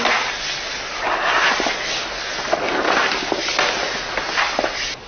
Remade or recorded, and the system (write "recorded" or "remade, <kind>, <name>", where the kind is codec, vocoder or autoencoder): recorded